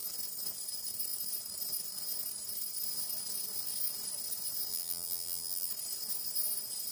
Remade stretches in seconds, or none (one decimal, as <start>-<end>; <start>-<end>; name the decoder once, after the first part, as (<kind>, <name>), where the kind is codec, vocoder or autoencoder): 4.7-5.7 (vocoder, BigVGAN v2)